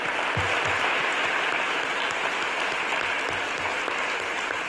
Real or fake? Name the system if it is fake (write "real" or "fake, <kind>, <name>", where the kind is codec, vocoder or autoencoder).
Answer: real